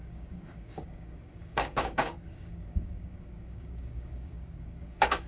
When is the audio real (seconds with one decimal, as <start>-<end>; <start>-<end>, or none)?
none